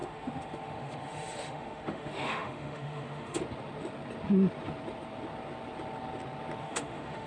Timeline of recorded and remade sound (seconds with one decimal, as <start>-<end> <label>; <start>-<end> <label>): 0.0-3.4 remade; 3.4-6.6 recorded; 6.6-7.3 remade